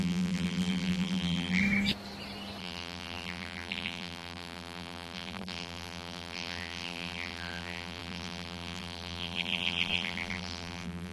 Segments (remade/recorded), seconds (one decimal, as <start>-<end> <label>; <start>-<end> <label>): 0.0-1.6 remade; 1.6-2.6 recorded; 2.6-11.1 remade